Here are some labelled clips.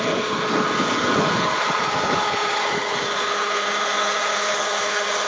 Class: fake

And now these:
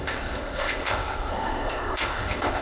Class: fake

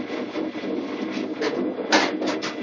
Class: real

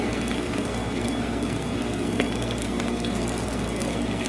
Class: fake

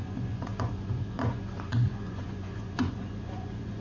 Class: fake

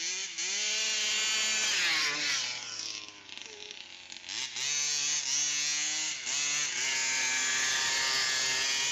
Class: real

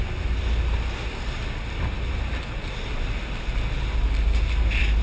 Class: real